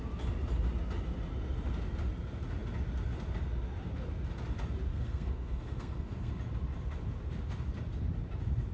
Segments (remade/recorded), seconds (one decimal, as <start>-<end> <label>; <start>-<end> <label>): 0.0-4.9 recorded; 4.9-6.3 remade; 6.3-8.7 recorded